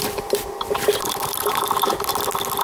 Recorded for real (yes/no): yes